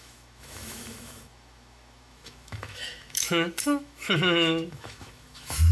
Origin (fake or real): fake